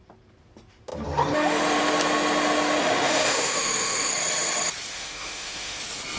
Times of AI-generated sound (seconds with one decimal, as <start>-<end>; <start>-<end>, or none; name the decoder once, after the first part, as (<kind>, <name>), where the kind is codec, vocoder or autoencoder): 2.8-4.1 (autoencoder, DAC-VAE); 4.9-5.8